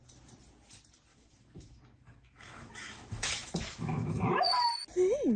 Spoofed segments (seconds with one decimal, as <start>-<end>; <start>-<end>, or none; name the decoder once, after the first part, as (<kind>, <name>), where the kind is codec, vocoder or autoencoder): 1.1-4.3 (autoencoder, DAC-VAE)